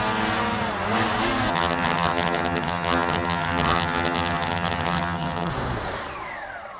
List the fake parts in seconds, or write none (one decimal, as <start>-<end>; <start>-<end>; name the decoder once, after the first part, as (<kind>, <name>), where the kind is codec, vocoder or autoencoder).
1.5-5.5 (vocoder, HiFi-GAN)